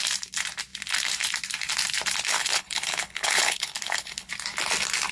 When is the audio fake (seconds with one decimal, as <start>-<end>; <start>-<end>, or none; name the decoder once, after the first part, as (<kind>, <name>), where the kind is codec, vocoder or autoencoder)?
2.3-4.3 (codec, HILCodec)